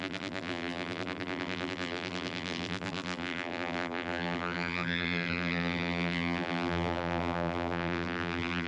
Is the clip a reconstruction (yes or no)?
yes